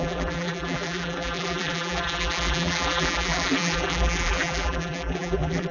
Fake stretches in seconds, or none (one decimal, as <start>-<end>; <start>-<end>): 0.0-5.7